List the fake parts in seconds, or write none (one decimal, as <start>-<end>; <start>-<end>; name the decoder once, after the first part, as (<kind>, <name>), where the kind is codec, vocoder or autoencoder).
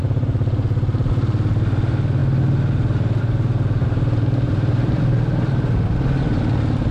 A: 3.8-5.0 (vocoder, BigVGAN v2)